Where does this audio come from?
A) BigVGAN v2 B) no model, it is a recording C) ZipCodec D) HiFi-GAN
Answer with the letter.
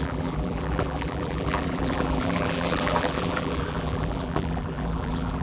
A